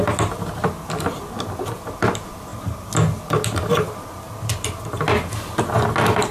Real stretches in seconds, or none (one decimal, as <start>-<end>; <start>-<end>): 0.0-6.3